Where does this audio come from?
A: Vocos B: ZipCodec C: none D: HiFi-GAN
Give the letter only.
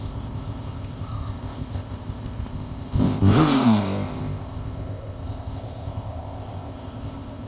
B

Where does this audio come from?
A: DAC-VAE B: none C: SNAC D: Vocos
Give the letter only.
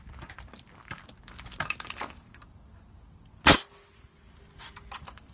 B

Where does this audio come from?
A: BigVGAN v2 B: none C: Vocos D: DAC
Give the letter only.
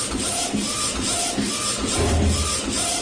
B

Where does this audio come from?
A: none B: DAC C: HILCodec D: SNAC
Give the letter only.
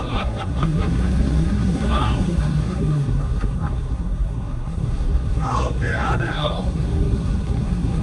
D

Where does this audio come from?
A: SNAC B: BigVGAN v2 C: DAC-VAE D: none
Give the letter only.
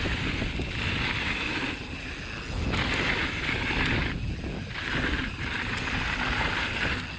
D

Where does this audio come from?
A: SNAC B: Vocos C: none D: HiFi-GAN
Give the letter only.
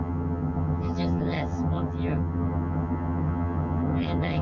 D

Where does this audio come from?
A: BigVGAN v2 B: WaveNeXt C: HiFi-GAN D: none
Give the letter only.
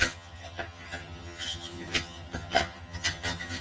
C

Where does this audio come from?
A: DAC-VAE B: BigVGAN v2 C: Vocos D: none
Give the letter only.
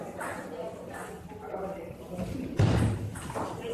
D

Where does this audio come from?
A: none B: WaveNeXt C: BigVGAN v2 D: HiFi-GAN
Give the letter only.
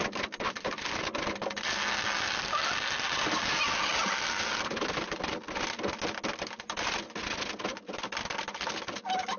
A